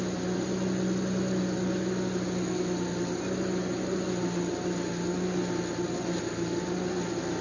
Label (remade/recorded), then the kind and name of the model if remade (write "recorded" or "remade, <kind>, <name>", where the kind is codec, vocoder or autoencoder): recorded